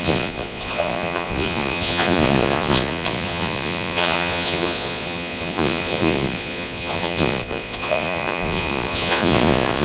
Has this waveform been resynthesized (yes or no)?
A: yes